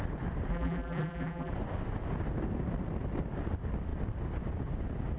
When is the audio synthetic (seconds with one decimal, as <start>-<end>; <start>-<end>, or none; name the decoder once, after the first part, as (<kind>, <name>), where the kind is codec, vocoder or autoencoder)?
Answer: 0.5-1.5 (vocoder, BigVGAN v2)